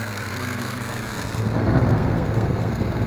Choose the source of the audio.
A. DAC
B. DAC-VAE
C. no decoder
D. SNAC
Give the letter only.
D